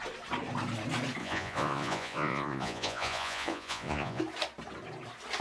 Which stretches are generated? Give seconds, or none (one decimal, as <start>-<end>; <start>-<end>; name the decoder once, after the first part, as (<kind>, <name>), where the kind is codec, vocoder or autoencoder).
1.2-4.2 (vocoder, Vocos)